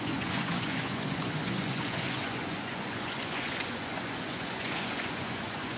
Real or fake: fake